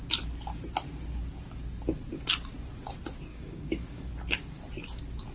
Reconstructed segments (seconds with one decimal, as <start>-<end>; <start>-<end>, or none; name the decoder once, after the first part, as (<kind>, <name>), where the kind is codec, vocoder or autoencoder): 3.3-4.1 (codec, DAC)